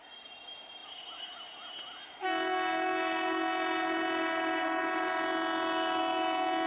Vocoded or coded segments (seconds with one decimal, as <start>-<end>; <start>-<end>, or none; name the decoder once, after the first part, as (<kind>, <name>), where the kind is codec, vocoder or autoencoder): none